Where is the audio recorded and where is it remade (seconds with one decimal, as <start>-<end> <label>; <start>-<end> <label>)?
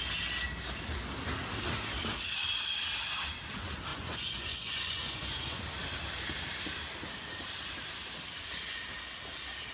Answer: 0.0-3.9 recorded; 3.9-5.6 remade; 5.6-9.7 recorded